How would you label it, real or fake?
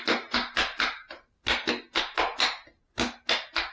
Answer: real